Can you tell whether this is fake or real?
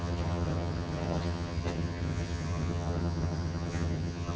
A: fake